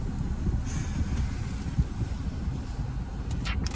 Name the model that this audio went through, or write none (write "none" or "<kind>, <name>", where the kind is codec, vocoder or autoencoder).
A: none